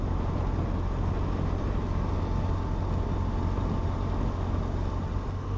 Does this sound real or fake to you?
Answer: real